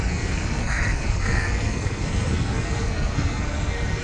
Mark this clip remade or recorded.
remade